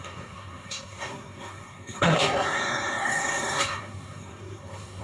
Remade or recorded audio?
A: remade